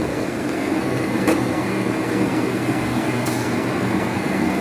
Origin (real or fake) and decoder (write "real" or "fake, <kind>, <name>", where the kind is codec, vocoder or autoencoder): fake, codec, SNAC